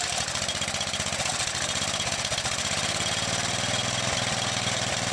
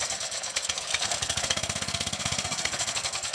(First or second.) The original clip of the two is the first